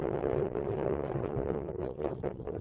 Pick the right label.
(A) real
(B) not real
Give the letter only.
B